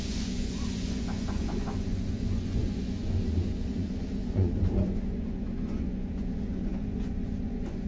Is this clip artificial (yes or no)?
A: yes